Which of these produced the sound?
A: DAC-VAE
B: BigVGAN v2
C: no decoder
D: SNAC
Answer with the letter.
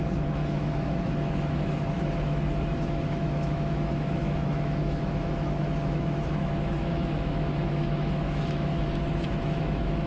A